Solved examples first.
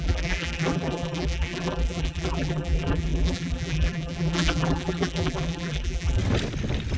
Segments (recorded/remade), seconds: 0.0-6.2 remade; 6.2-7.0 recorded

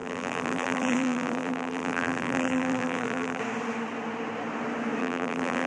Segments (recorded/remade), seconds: 0.0-3.4 remade; 3.4-5.0 recorded; 5.0-5.7 remade

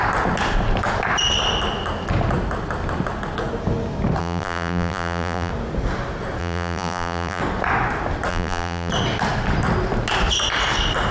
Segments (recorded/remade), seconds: 0.0-4.2 recorded; 4.2-5.5 remade; 5.5-6.4 recorded; 6.4-7.4 remade; 7.4-8.3 recorded; 8.3-8.9 remade; 8.9-11.1 recorded

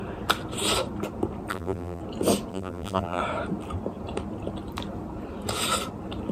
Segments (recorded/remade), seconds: 0.0-1.5 recorded; 1.5-2.0 remade; 2.0-2.5 recorded; 2.5-3.2 remade; 3.2-6.3 recorded